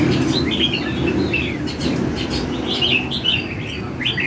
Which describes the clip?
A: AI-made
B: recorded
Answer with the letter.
B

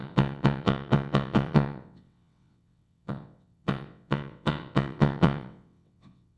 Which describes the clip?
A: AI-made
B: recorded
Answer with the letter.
A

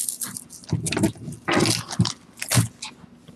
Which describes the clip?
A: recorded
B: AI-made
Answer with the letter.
A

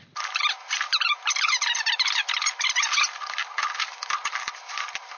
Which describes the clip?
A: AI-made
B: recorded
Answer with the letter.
B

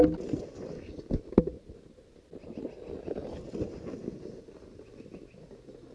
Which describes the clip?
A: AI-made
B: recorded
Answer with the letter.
B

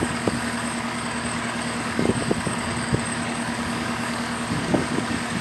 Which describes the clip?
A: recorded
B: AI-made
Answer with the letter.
B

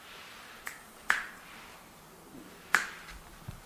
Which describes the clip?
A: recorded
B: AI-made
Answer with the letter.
B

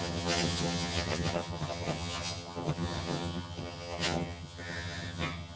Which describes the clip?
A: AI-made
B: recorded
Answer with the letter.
A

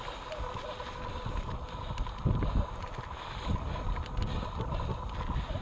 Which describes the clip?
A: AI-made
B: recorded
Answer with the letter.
B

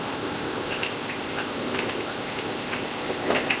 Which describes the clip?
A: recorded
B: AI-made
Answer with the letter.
B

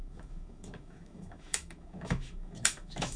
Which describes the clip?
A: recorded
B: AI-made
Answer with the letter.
B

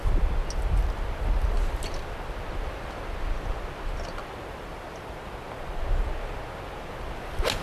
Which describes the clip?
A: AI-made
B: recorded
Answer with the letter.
B